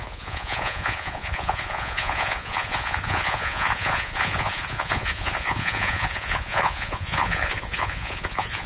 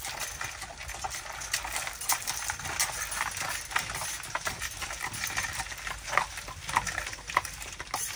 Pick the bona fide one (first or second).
second